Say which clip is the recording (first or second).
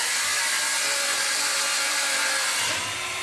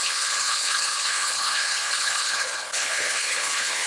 first